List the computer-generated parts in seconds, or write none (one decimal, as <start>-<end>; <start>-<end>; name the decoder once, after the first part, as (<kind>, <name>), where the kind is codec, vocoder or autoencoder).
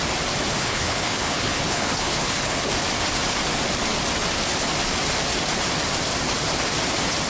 0.6-2.6 (codec, HILCodec)